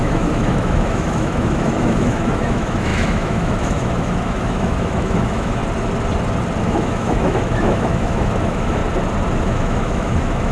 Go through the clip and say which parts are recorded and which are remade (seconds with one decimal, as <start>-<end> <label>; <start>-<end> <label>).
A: 0.0-5.6 remade; 5.6-6.6 recorded; 6.6-8.8 remade; 8.8-9.4 recorded; 9.4-10.5 remade